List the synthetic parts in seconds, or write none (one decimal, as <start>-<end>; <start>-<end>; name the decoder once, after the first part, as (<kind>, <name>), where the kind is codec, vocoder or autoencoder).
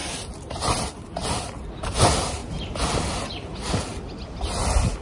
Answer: 0.0-1.6 (vocoder, BigVGAN v2); 2.4-3.2